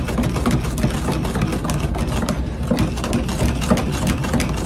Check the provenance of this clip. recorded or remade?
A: recorded